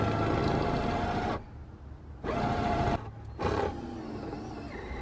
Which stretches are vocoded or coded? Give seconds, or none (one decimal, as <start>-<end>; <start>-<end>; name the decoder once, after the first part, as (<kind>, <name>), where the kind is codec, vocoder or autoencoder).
none